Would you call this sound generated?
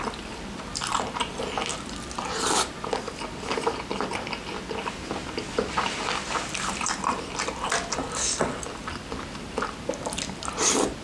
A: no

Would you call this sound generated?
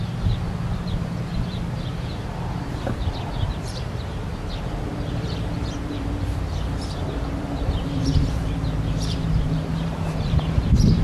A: yes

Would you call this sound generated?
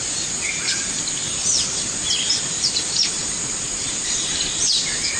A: yes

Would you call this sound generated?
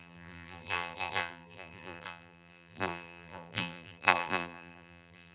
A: yes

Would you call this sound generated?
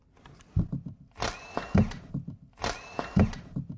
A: no